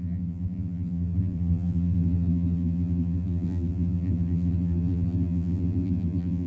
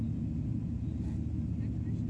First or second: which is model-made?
first